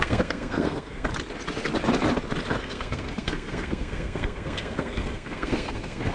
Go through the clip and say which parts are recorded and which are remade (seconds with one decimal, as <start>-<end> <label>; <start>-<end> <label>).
0.0-1.1 remade; 1.1-2.6 recorded; 2.6-6.1 remade